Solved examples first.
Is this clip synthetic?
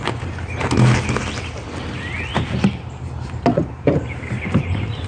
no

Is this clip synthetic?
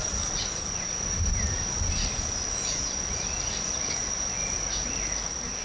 no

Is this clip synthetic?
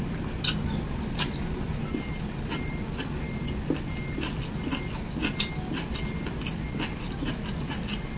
no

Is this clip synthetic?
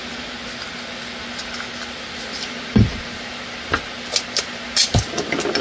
no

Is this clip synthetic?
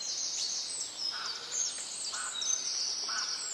no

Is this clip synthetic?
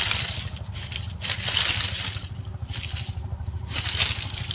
no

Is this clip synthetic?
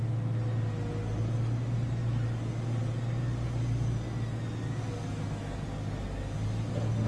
no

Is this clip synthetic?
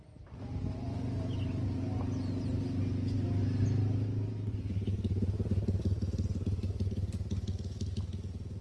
no